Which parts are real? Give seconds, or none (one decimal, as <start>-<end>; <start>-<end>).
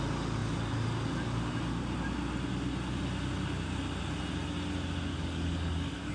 0.0-5.1